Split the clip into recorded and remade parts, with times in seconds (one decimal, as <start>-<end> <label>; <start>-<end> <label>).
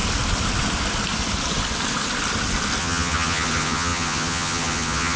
0.0-2.8 recorded; 2.8-5.2 remade